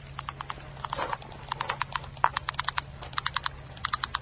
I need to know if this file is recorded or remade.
recorded